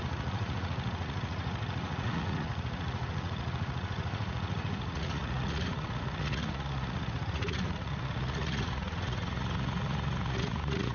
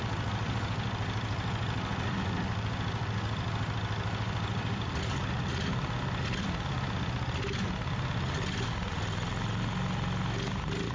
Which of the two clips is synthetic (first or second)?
first